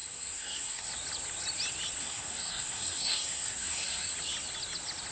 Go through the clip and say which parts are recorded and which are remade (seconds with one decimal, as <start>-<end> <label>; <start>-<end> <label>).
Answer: 0.0-0.9 remade; 0.9-2.0 recorded; 2.0-4.1 remade; 4.1-5.1 recorded